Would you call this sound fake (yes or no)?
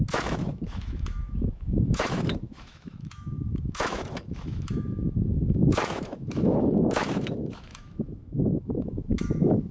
yes